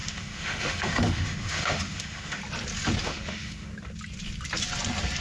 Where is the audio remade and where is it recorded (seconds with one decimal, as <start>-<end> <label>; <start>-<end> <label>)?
0.0-2.4 remade; 2.4-3.0 recorded; 3.0-3.7 remade; 3.7-5.2 recorded